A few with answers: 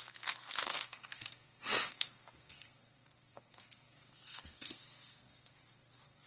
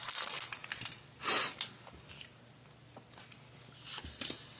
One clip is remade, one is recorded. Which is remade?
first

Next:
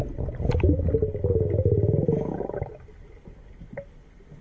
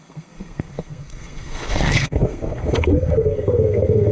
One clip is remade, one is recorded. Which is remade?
second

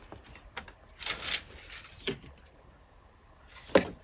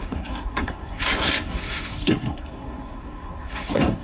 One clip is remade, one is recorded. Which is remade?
second